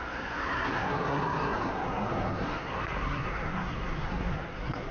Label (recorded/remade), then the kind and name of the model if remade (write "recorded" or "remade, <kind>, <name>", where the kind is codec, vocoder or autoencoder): remade, codec, SNAC